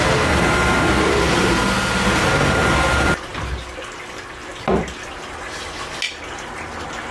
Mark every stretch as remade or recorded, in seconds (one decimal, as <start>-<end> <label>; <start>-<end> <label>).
0.0-7.1 recorded